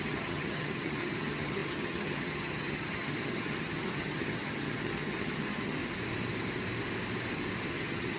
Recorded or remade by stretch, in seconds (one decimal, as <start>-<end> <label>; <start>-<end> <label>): 0.0-5.8 remade; 5.8-7.7 recorded; 7.7-8.2 remade